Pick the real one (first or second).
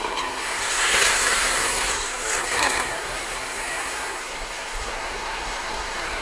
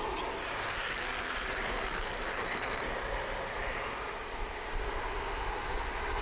second